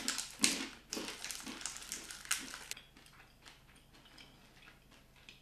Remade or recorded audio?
recorded